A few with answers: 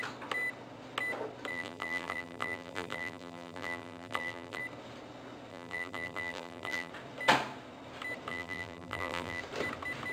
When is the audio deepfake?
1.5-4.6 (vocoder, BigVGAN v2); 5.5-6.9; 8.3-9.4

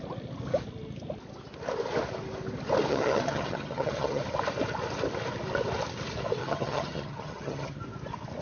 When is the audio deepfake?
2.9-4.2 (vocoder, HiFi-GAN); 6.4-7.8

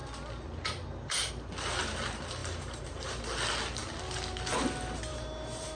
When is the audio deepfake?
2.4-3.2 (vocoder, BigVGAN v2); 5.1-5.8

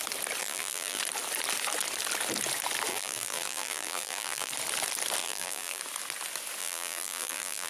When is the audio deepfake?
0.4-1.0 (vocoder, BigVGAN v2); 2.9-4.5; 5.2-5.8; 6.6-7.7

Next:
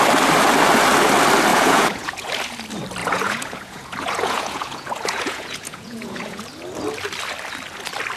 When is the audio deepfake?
1.5-2.3 (vocoder, Vocos); 3.0-6.4

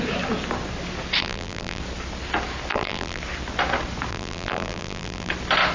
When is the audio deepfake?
1.2-1.8 (vocoder, BigVGAN v2); 2.7-3.2; 4.1-5.3

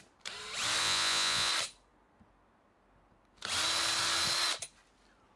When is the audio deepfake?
0.8-1.5 (vocoder, Vocos)

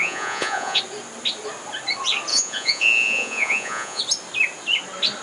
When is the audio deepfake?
0.0-0.8 (vocoder, Vocos); 2.3-4.0